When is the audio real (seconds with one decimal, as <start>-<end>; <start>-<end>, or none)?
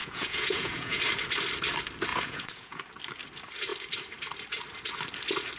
1.0-2.1; 2.8-5.6